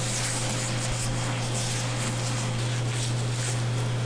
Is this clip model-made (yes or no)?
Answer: no